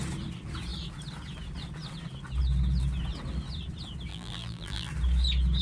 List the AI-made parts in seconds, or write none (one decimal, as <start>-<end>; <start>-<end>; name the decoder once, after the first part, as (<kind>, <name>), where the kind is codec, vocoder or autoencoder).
4.1-4.9 (vocoder, BigVGAN v2)